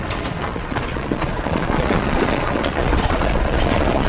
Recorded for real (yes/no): no